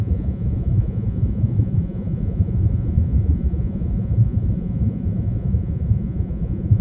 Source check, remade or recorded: remade